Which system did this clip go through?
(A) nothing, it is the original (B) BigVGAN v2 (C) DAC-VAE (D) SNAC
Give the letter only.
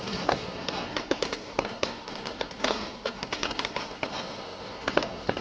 D